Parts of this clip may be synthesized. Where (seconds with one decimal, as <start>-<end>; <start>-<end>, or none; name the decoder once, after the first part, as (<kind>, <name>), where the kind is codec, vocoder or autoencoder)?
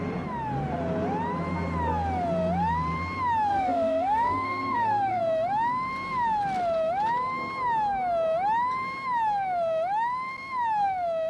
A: 3.5-5.2 (codec, SNAC)